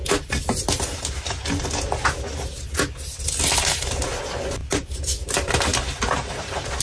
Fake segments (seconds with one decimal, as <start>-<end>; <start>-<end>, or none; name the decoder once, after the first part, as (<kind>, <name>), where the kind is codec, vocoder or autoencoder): none